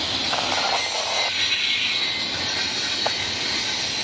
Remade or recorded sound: recorded